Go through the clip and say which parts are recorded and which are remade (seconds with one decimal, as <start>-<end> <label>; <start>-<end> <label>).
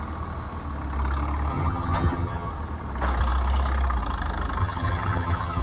0.0-1.5 recorded; 1.5-2.5 remade; 2.5-4.6 recorded; 4.6-5.6 remade